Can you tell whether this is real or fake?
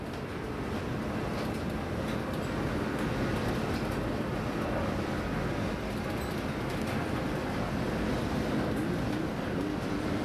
real